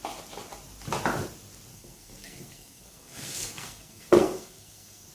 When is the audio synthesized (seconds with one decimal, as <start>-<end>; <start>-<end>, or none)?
1.7-5.1